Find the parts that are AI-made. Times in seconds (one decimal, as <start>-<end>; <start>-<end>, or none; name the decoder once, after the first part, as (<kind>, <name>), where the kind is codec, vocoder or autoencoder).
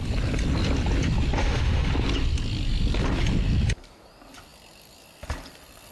1.4-1.9 (autoencoder, DAC-VAE)